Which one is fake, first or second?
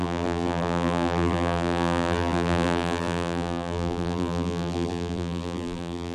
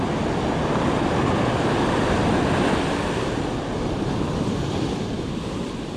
first